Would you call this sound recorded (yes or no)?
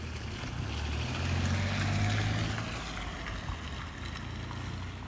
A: yes